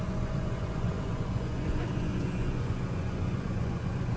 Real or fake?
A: fake